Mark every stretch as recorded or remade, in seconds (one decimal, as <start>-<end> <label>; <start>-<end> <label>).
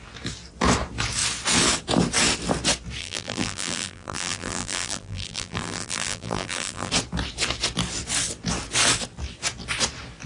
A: 0.0-3.0 recorded; 3.0-6.9 remade; 6.9-10.3 recorded